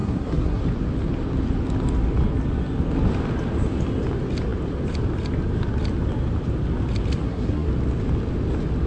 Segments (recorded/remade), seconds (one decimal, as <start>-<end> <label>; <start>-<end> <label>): 0.0-0.6 remade; 0.6-7.2 recorded; 7.2-7.7 remade; 7.7-8.9 recorded